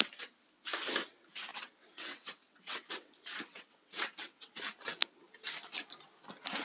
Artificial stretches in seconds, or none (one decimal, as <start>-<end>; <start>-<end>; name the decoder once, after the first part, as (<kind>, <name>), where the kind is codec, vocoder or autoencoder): 1.5-3.1 (vocoder, WaveNeXt); 3.5-4.5